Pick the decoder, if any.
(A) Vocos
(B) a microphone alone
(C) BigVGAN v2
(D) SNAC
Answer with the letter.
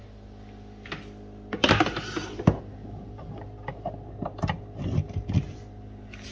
B